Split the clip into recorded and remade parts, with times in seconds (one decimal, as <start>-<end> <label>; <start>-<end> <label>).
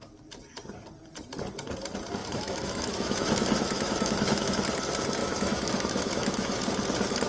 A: 0.0-2.2 recorded; 2.2-4.5 remade; 4.5-5.2 recorded; 5.2-6.6 remade; 6.6-7.3 recorded